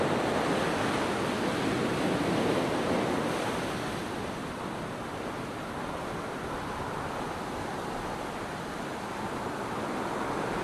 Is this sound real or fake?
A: real